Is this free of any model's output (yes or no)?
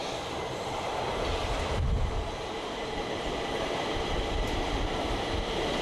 no